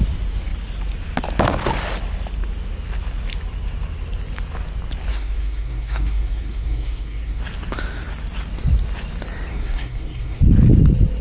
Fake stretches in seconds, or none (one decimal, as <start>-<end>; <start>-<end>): 5.1-7.4; 9.5-10.4